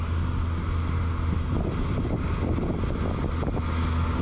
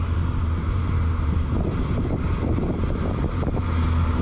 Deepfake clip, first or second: second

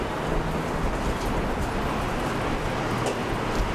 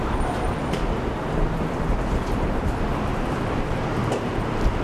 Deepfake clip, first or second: second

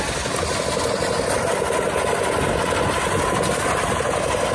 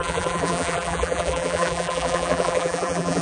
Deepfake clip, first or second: second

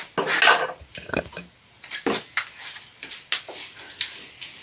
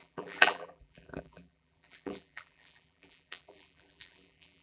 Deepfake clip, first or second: second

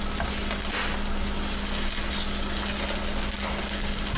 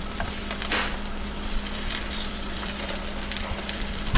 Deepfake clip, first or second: second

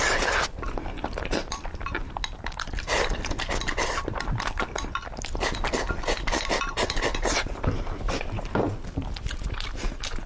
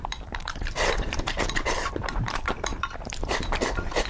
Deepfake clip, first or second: second